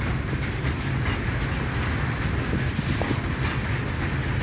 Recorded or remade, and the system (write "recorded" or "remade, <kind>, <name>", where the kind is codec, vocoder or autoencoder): recorded